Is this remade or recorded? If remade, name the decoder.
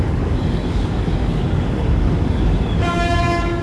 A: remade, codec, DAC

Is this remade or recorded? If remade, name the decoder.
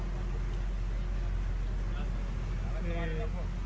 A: recorded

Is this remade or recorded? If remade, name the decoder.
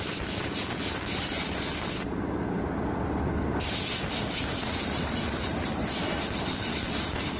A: recorded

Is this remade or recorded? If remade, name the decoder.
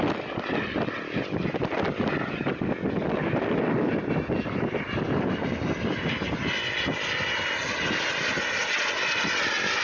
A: recorded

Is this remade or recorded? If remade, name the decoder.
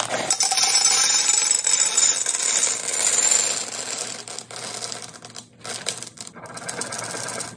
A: recorded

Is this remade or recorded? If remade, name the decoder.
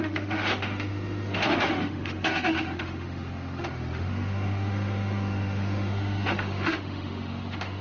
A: remade, autoencoder, DAC-VAE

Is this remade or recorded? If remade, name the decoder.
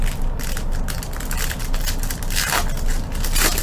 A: recorded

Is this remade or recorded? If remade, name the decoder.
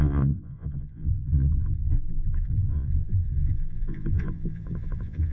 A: remade, vocoder, Vocos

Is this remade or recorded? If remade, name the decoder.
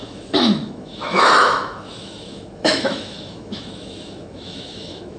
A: remade, autoencoder, DAC-VAE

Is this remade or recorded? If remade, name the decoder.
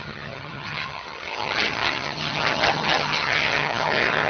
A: remade, vocoder, HiFi-GAN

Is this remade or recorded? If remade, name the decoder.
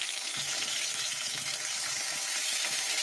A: remade, autoencoder, DAC-VAE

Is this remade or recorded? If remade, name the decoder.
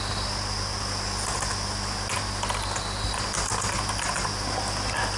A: recorded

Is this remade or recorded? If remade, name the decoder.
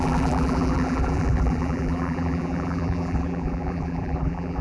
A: remade, vocoder, BigVGAN v2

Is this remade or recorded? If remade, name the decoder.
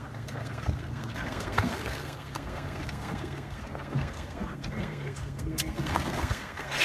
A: remade, codec, SNAC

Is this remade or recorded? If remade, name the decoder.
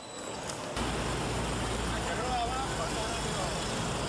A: recorded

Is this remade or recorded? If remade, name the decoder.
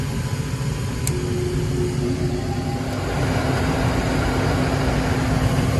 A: recorded